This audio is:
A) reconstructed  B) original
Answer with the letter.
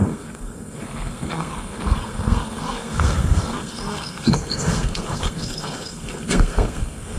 A